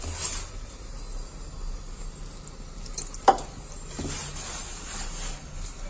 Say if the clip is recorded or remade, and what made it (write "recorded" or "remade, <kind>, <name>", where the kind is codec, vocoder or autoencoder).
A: recorded